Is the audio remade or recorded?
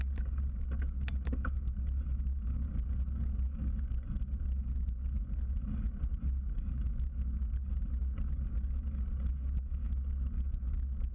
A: recorded